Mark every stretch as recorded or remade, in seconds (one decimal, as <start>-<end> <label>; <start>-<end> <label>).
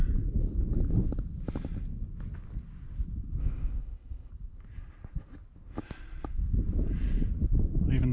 0.0-3.4 recorded; 3.4-4.3 remade; 4.3-8.1 recorded